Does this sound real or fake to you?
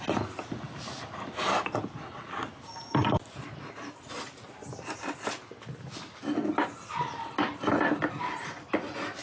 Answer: real